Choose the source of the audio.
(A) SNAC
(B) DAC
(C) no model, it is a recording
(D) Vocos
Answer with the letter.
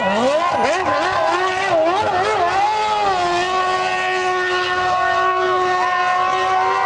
C